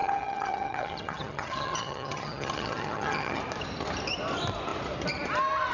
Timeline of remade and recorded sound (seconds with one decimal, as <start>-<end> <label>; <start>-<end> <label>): 0.0-3.4 remade; 3.4-5.7 recorded